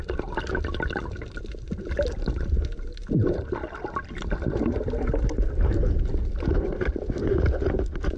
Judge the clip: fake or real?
real